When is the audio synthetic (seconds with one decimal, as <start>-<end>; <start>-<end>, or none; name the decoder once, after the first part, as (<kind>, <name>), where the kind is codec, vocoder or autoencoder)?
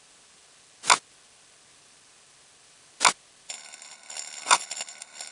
3.5-5.3 (codec, HILCodec)